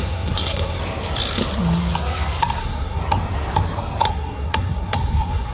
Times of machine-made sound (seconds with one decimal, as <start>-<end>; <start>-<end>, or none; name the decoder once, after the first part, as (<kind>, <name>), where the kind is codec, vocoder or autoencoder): 0.0-0.8 (codec, SNAC); 2.6-3.0; 4.0-5.5